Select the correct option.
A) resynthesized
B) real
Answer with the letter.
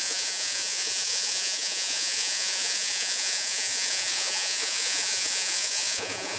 A